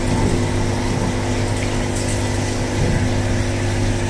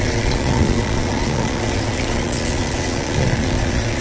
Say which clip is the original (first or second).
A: first